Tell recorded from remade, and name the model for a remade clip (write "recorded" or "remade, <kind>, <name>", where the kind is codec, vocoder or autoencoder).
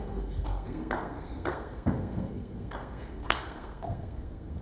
remade, codec, SNAC